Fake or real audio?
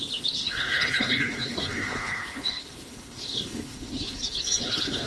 fake